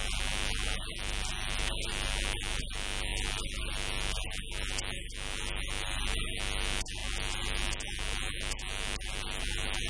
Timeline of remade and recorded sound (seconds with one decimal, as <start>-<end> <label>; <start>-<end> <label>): 0.0-9.9 recorded